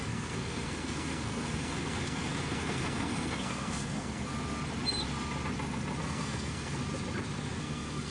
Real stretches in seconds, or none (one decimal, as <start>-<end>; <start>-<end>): 4.3-6.0; 6.8-7.6